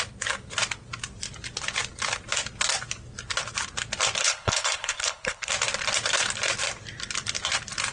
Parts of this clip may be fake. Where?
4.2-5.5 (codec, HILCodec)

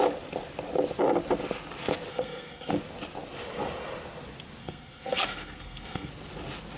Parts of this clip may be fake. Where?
2.1-2.7 (codec, SNAC); 4.6-6.1